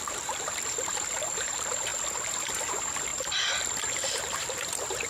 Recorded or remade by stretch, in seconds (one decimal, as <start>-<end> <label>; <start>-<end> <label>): 0.0-1.9 remade; 1.9-2.7 recorded; 2.7-3.1 remade; 3.1-3.7 recorded; 3.7-5.1 remade